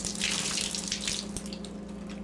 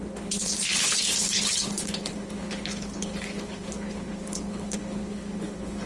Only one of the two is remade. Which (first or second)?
second